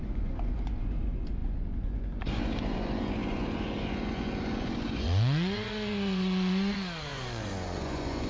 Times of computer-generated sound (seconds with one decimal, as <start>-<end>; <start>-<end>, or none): 0.0-8.3